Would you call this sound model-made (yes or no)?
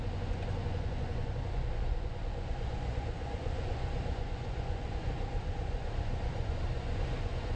yes